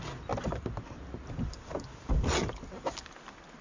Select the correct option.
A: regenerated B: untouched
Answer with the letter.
B